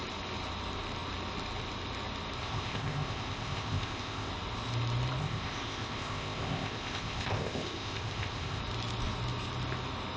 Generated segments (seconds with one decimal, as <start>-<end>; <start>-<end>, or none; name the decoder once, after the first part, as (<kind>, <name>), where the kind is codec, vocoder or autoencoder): 2.4-4.3 (codec, ZipCodec); 5.2-8.6